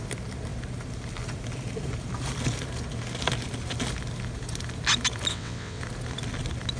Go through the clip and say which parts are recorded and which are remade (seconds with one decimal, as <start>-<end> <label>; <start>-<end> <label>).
0.0-5.3 recorded; 5.3-5.8 remade; 5.8-6.8 recorded